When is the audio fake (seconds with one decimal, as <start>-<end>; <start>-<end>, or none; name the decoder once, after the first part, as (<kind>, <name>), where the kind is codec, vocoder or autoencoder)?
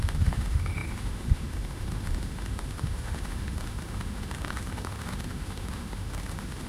0.0-6.7 (autoencoder, DAC-VAE)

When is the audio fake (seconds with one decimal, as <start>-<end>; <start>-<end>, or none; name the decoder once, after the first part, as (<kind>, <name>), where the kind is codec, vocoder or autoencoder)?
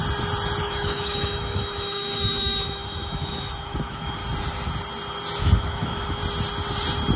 0.6-4.2 (autoencoder, DAC-VAE); 5.4-6.2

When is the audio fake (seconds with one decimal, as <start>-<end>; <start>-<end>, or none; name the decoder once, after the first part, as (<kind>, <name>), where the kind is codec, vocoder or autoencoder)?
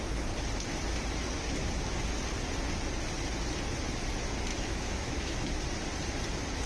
4.5-5.5 (autoencoder, DAC-VAE)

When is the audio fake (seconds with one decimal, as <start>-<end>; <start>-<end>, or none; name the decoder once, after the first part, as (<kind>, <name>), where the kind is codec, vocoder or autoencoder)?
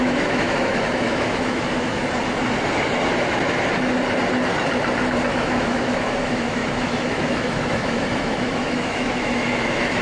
0.0-2.0 (autoencoder, DAC-VAE); 5.3-10.0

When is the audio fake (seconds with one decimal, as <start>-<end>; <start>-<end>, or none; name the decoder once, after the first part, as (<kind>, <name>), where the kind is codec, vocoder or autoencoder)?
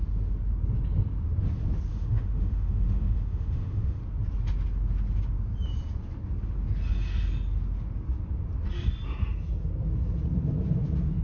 1.9-4.0 (autoencoder, DAC-VAE)